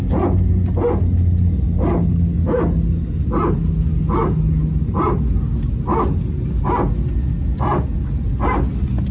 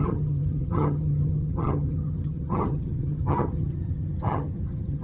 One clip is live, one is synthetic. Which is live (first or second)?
first